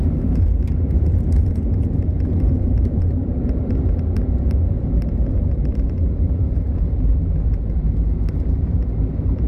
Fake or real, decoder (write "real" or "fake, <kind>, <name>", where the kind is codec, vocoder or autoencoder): fake, vocoder, BigVGAN v2